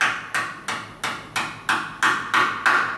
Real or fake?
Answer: real